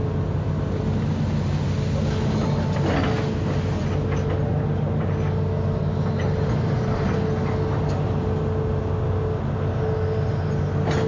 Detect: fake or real real